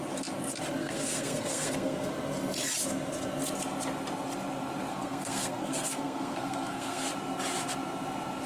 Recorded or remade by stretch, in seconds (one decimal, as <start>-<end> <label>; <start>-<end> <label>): 0.0-0.8 recorded; 0.8-2.1 remade; 2.1-4.9 recorded; 4.9-7.1 remade; 7.1-8.5 recorded